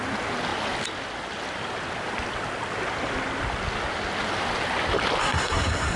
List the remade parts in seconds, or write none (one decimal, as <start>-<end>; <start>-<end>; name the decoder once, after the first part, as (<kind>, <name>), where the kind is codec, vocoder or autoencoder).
5.2-6.0 (codec, SNAC)